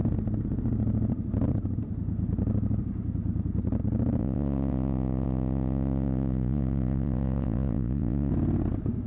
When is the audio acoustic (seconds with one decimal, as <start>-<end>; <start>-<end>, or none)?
0.0-4.2; 8.3-9.1